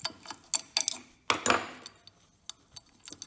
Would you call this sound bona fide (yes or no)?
yes